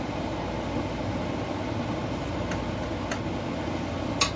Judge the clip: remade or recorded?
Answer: recorded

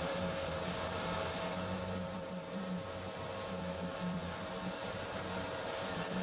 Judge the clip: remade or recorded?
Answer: remade